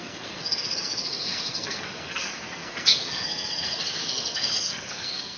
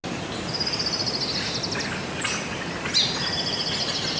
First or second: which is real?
second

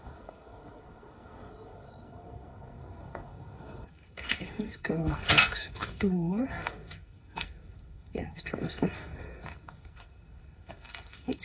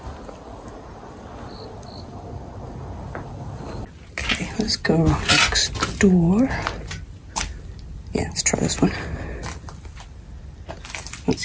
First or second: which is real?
second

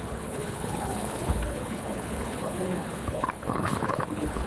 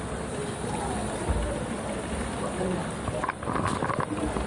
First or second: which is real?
second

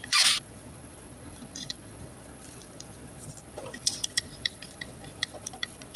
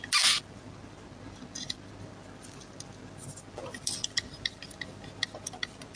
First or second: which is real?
second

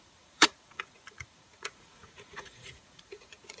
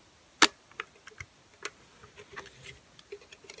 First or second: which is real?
second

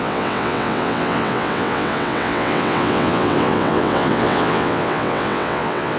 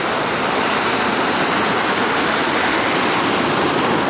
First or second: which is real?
second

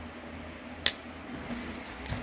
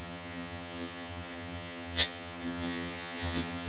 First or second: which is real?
first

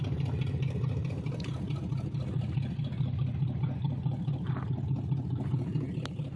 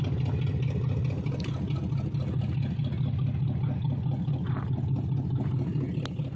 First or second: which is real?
second